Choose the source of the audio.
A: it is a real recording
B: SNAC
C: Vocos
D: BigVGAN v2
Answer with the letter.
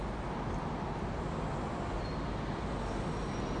A